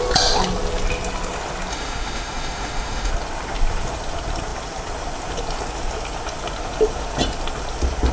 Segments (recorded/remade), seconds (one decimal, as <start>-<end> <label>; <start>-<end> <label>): 0.0-1.7 recorded; 1.7-3.1 remade; 3.1-8.1 recorded